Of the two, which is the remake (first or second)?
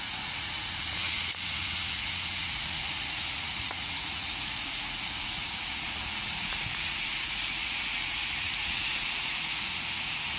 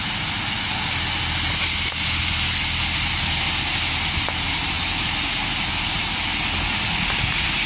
first